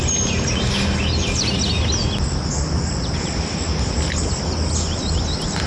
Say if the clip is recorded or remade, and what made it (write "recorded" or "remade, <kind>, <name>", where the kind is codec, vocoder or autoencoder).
recorded